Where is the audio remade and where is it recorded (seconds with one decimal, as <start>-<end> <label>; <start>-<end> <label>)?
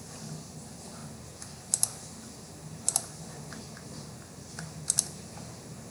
0.0-5.9 recorded